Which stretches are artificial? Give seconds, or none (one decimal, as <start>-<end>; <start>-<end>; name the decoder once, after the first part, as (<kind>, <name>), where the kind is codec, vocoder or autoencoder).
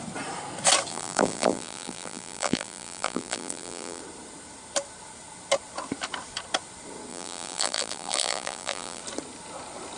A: 0.9-4.0 (vocoder, BigVGAN v2); 7.1-9.0